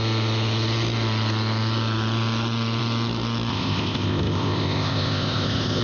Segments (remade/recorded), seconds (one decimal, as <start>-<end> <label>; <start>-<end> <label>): 0.0-3.5 recorded; 3.5-5.8 remade